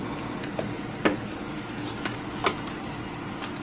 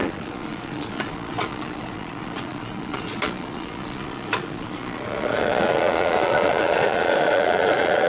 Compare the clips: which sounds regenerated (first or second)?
second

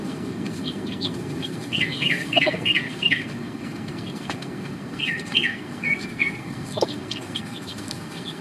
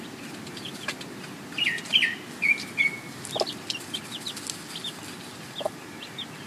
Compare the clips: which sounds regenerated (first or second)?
first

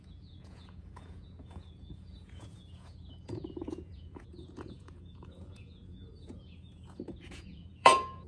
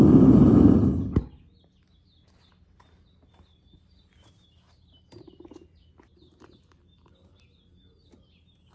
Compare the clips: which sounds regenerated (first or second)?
first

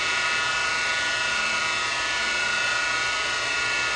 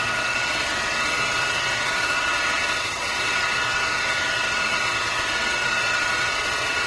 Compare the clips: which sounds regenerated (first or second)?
second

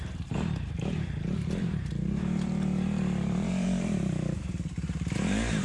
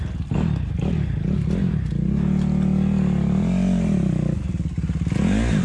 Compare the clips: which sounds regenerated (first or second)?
first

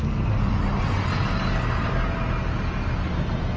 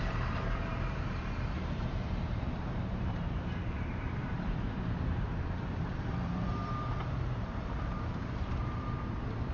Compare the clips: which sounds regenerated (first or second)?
second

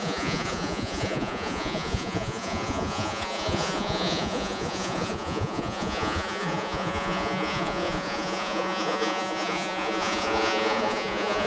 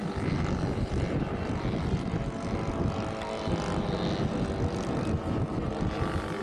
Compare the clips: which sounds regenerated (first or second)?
first